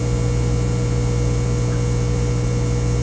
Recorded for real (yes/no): yes